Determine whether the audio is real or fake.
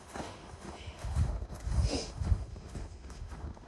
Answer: fake